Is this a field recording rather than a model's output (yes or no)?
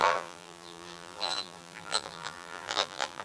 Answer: no